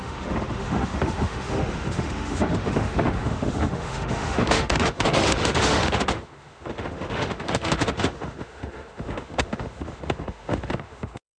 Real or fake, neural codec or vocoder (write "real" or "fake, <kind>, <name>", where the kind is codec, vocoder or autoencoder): fake, autoencoder, DAC-VAE